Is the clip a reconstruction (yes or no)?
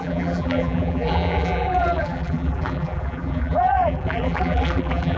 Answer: yes